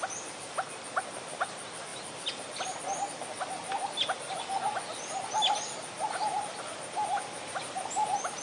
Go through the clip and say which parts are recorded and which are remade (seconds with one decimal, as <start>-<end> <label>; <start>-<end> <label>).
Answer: 0.0-8.4 recorded